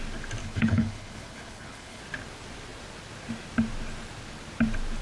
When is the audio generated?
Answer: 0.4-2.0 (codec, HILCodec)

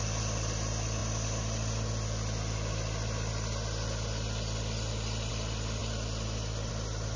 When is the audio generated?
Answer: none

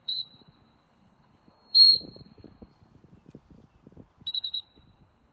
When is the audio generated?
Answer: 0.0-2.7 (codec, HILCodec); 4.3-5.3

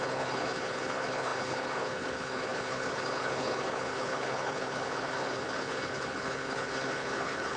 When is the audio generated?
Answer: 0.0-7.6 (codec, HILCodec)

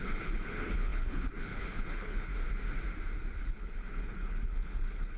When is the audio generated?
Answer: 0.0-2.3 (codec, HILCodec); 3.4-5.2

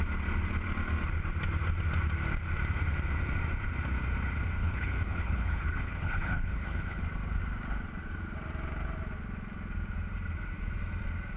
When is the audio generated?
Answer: 4.6-7.0 (codec, HILCodec)